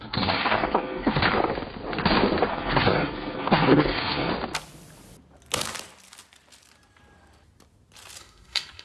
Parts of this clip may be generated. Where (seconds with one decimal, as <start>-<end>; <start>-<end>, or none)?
0.0-1.2; 2.5-4.3; 8.2-8.8